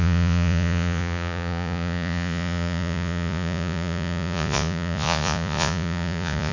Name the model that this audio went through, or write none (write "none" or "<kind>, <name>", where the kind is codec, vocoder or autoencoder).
vocoder, Vocos